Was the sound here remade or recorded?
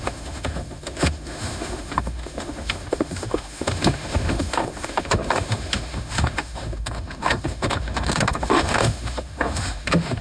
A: remade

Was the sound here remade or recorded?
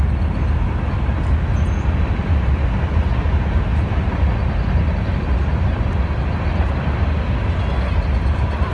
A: recorded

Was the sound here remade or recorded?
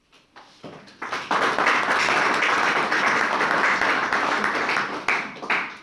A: recorded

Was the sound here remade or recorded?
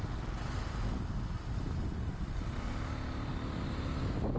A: recorded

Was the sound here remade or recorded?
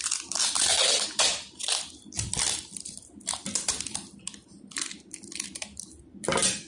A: remade